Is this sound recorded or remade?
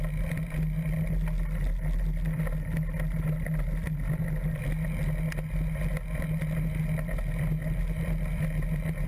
recorded